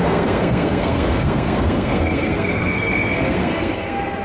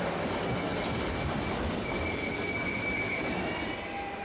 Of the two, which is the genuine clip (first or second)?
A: second